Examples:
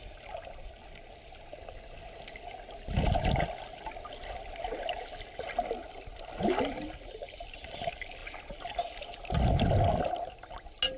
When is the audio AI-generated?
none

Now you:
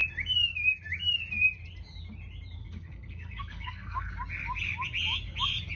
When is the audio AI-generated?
2.6-4.1